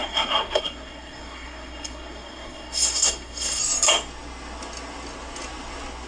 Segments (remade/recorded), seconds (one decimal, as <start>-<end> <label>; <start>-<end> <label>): 0.0-3.6 remade; 3.6-6.1 recorded